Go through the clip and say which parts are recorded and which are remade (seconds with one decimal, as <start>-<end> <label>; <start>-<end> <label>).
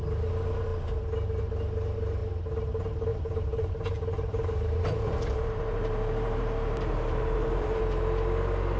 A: 0.0-3.1 recorded; 3.1-7.8 remade; 7.8-8.8 recorded